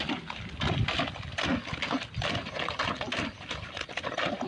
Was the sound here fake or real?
real